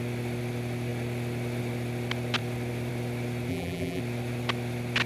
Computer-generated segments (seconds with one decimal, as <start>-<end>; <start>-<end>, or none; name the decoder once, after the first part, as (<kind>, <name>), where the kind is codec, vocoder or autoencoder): 3.5-4.0 (vocoder, BigVGAN v2)